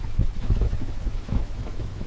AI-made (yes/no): yes